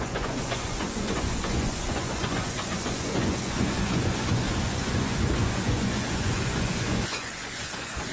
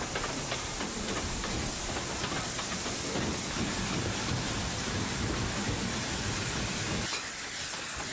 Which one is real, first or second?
second